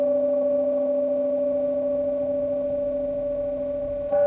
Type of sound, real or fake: fake